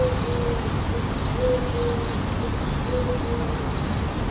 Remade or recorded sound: recorded